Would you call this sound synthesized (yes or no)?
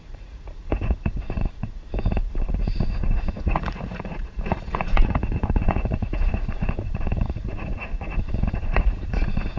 yes